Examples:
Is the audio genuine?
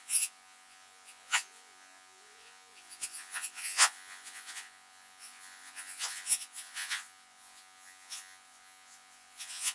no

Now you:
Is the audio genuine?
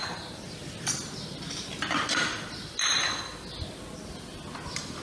yes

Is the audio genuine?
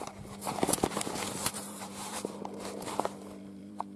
no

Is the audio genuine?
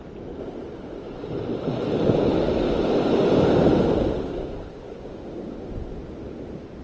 yes